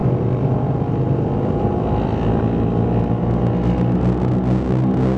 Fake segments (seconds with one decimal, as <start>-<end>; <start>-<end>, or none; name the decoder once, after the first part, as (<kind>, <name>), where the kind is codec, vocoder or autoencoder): 0.0-3.1 (vocoder, BigVGAN v2)